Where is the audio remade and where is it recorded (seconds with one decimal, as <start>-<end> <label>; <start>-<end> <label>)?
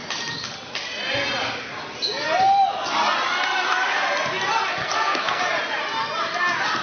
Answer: 0.0-4.8 recorded; 4.8-5.4 remade; 5.4-6.8 recorded